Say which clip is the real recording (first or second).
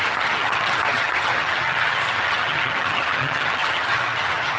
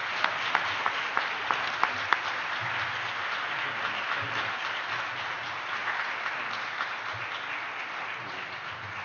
second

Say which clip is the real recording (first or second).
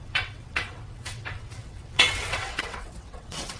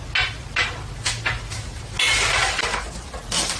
second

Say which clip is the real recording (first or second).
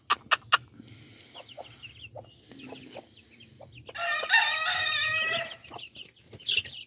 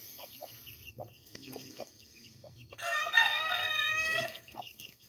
first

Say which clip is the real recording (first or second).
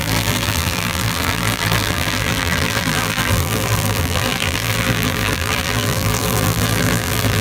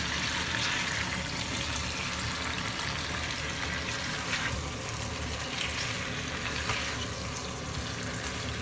second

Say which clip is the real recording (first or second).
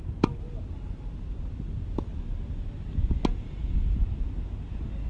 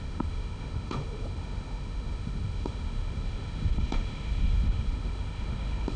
first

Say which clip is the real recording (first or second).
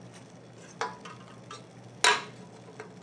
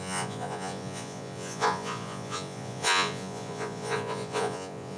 first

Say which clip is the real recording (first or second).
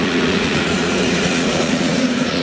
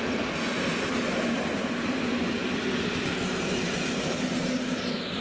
second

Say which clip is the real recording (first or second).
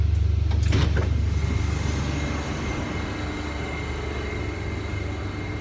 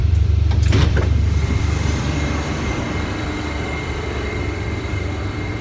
first